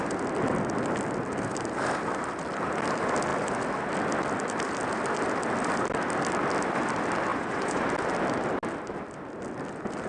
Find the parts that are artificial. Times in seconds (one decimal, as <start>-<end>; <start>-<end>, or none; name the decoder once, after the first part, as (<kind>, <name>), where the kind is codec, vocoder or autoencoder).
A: 7.3-7.9 (vocoder, Vocos)